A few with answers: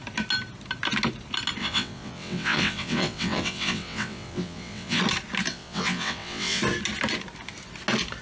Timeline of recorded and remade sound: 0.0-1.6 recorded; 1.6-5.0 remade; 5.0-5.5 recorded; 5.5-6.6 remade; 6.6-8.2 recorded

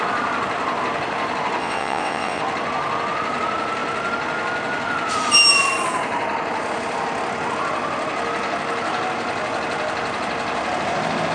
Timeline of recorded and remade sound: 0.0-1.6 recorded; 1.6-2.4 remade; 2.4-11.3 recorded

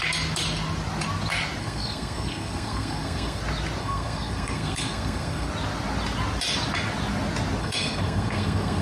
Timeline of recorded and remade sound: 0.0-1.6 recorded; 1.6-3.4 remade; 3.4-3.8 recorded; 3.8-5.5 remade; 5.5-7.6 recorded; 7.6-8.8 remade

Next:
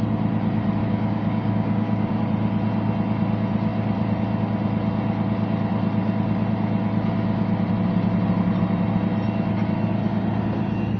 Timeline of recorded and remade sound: 0.0-0.8 recorded; 0.8-2.2 remade; 2.2-11.0 recorded